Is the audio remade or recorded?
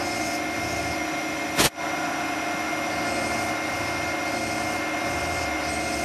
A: recorded